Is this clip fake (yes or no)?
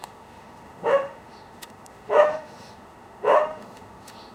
yes